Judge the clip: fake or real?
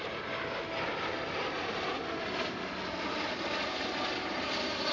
real